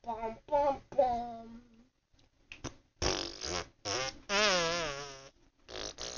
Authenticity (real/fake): real